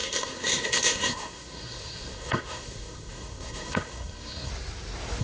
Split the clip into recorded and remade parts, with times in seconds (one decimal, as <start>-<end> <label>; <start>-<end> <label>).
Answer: 0.0-4.5 remade; 4.5-5.2 recorded